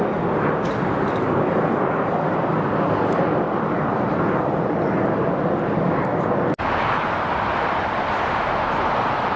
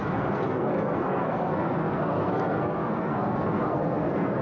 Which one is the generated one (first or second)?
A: second